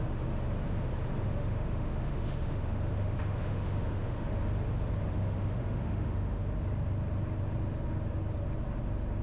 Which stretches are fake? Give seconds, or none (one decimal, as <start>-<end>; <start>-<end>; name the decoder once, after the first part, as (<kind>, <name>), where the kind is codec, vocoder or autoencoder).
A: 1.2-4.4 (autoencoder, DAC-VAE); 5.0-6.4